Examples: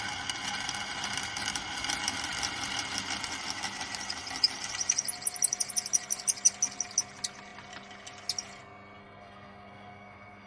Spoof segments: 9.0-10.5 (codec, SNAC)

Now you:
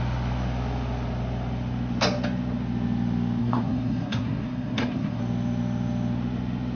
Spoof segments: 3.4-5.2 (codec, SNAC)

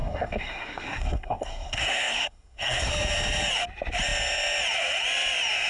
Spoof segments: 0.0-2.9 (codec, SNAC)